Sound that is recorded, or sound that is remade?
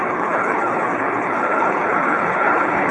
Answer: remade